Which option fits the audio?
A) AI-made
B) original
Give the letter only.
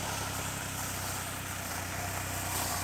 B